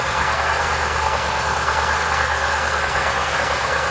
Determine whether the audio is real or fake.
fake